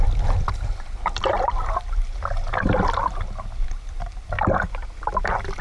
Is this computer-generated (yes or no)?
no